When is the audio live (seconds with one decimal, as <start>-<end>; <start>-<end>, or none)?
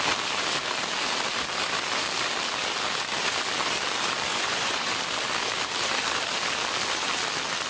0.0-4.3; 4.9-7.7